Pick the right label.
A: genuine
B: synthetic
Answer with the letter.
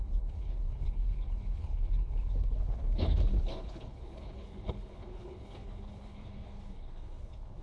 B